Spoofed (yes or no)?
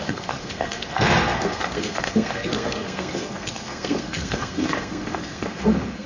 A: yes